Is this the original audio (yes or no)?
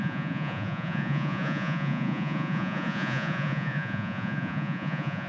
no